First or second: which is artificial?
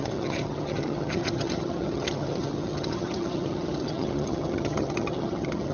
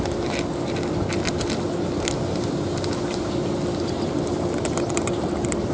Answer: first